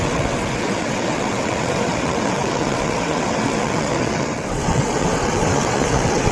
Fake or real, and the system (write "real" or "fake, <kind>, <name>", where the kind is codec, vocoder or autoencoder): fake, vocoder, WaveNeXt